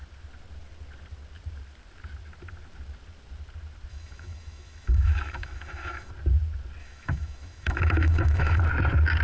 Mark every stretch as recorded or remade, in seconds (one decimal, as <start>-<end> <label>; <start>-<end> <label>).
0.0-3.9 recorded; 3.9-6.1 remade; 6.1-6.8 recorded; 6.8-8.6 remade; 8.6-9.2 recorded